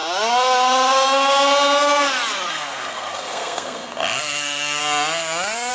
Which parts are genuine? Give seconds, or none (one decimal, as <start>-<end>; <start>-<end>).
0.0-2.5; 4.8-5.7